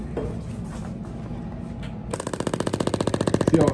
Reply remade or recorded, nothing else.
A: recorded